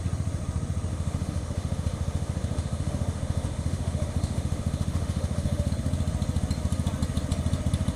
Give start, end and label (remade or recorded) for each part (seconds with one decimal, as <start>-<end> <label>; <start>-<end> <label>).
0.0-0.9 recorded; 0.9-5.7 remade; 5.7-8.0 recorded